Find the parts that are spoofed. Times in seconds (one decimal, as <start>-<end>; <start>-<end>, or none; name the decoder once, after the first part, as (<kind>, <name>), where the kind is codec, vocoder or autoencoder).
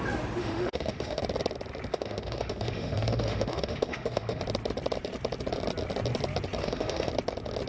0.4-1.2 (autoencoder, DAC-VAE); 1.9-4.4; 6.6-7.1